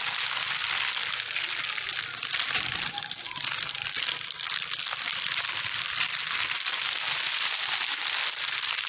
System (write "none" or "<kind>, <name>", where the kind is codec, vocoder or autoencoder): none